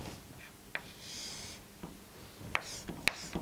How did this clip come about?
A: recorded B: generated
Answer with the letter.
A